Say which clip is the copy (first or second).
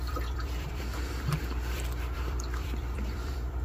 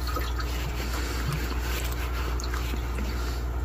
first